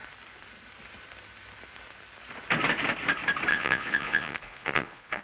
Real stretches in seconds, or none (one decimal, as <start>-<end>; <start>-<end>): 0.0-3.5